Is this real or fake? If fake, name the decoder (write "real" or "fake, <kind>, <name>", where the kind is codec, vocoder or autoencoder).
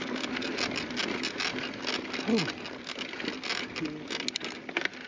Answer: real